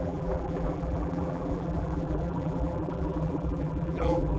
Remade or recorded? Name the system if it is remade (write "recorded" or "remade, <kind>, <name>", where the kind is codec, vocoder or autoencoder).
remade, vocoder, BigVGAN v2